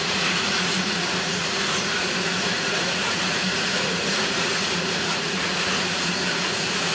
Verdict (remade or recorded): remade